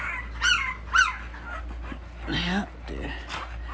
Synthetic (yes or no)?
no